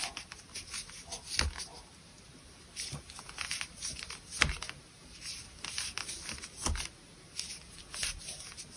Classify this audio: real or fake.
real